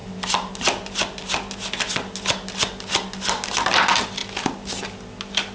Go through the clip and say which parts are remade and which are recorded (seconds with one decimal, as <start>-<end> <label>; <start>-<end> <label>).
0.0-5.5 recorded